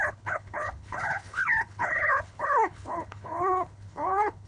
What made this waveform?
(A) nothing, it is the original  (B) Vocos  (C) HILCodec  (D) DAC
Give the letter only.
C